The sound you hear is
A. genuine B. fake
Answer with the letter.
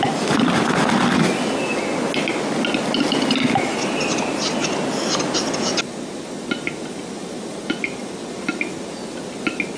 A